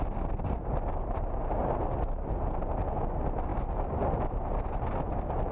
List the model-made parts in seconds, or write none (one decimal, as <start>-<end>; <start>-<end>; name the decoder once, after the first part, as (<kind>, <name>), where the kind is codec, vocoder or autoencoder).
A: none